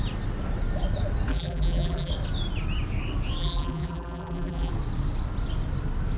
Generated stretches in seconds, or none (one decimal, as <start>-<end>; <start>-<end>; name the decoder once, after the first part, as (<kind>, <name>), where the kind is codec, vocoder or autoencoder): 1.3-2.1 (vocoder, BigVGAN v2); 3.4-4.7